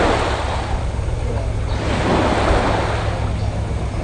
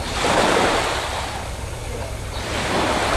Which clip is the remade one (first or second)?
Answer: second